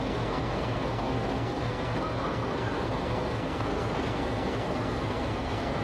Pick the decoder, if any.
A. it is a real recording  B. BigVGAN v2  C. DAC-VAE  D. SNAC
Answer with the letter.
D